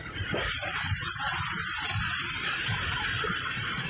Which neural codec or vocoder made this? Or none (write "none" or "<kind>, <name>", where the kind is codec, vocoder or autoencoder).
vocoder, BigVGAN v2